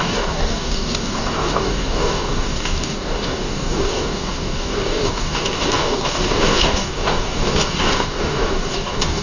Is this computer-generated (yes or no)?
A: yes